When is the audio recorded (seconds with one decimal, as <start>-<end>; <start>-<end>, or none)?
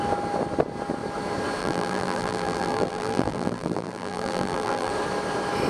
0.0-1.6; 4.9-5.7